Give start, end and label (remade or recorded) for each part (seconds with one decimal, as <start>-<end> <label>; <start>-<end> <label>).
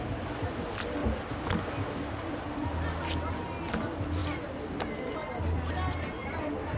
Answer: 0.0-6.8 recorded